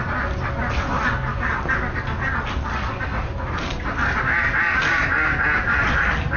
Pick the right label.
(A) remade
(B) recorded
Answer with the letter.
B